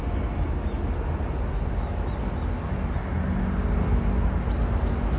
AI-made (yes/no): no